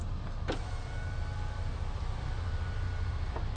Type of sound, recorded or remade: recorded